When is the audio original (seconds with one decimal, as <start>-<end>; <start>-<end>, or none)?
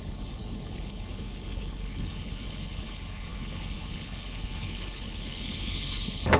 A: none